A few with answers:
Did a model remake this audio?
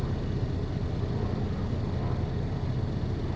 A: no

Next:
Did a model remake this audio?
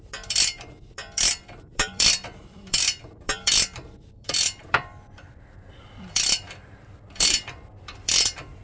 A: yes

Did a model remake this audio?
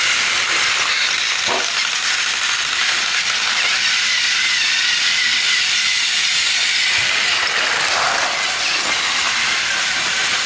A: yes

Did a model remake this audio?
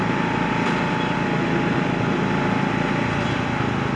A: no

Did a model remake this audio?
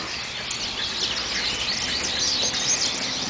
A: no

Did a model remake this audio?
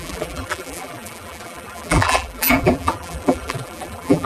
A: yes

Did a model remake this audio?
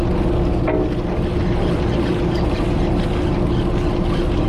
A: no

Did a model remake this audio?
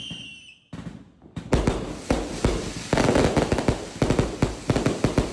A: no